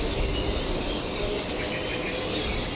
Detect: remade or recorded recorded